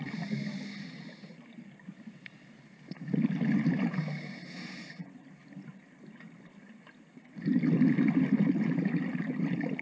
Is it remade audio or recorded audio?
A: recorded